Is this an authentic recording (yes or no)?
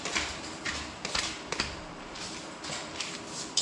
no